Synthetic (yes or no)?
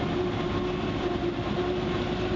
no